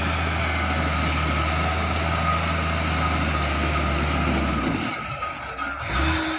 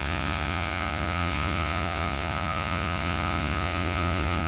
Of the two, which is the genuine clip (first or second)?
first